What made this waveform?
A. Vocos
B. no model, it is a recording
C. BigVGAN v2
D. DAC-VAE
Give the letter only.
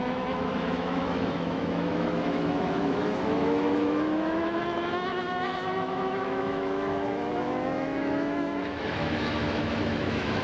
D